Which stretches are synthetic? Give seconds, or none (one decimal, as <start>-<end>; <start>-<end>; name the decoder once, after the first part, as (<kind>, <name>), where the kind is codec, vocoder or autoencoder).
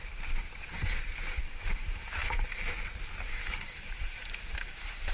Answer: 1.4-2.2 (autoencoder, DAC-VAE); 3.8-5.1